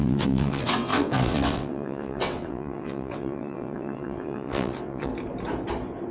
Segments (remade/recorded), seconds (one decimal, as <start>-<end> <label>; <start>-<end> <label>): 0.0-5.1 remade; 5.1-6.1 recorded